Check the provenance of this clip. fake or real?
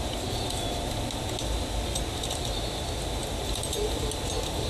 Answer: real